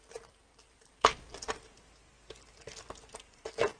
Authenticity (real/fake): real